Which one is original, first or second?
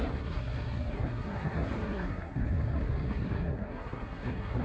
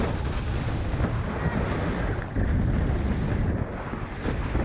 second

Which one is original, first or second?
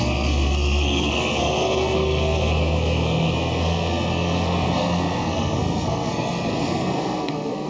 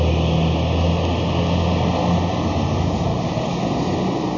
second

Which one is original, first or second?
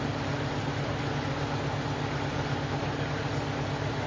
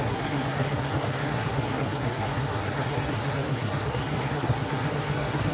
first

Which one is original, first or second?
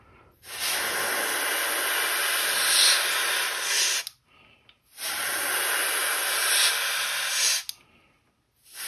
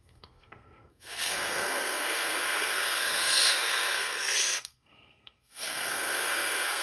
first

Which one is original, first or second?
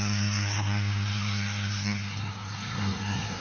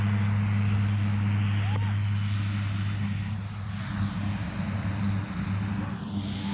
second